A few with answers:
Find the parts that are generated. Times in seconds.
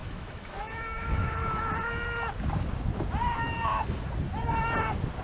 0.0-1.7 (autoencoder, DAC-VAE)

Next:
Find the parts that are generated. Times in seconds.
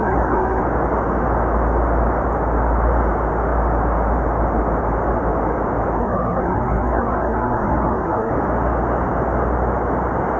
0.0-0.6 (codec, SNAC); 6.0-8.3